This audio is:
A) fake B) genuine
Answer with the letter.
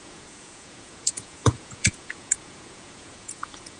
A